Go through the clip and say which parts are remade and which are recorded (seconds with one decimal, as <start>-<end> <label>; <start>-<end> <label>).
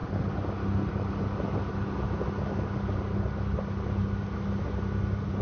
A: 0.0-5.4 recorded